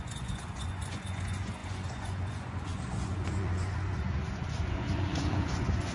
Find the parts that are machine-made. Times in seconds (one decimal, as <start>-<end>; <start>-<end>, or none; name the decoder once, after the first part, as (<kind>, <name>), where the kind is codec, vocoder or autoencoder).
0.0-5.9 (vocoder, Vocos)